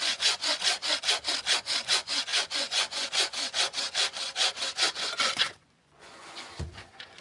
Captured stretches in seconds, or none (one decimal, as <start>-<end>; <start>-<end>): 0.8-1.6